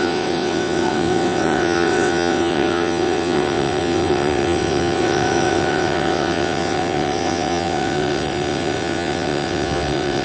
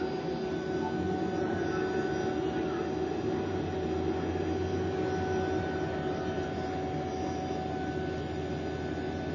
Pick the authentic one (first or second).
second